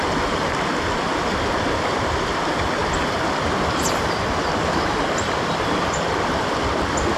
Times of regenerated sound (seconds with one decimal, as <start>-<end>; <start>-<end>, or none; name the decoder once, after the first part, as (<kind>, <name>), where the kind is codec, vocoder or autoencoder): none